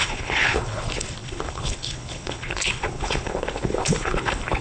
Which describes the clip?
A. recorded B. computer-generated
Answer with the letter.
B